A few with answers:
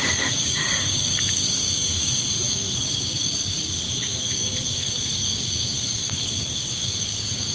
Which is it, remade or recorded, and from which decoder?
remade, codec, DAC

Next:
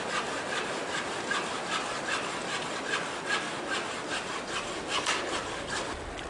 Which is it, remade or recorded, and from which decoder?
recorded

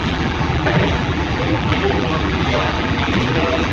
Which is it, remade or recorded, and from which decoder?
remade, vocoder, BigVGAN v2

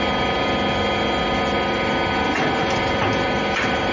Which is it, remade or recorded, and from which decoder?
recorded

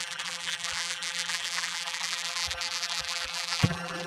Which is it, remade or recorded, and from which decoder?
remade, vocoder, BigVGAN v2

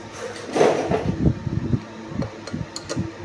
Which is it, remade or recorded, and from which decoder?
recorded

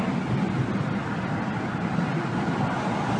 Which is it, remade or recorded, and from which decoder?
recorded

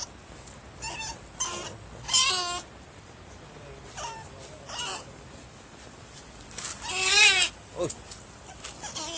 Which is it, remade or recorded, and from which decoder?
recorded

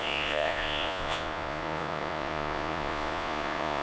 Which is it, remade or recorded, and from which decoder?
remade, vocoder, Vocos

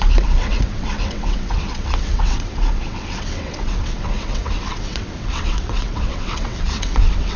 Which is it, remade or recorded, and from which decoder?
remade, vocoder, WaveNeXt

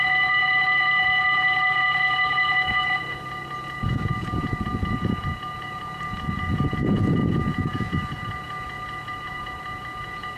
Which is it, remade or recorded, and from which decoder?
remade, vocoder, Vocos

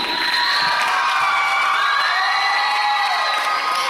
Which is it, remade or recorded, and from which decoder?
recorded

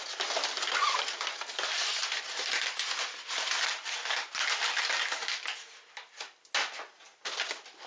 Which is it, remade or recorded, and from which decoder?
recorded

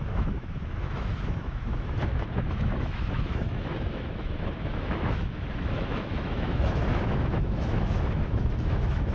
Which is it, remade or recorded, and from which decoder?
remade, autoencoder, DAC-VAE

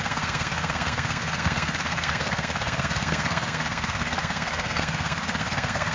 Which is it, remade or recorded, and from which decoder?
remade, codec, SNAC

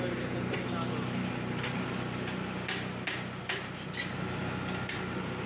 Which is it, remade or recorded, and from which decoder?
recorded